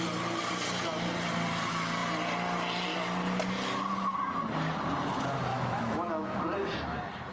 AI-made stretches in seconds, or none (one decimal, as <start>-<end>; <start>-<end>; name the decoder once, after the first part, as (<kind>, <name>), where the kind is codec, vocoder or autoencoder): 5.5-6.4 (autoencoder, DAC-VAE)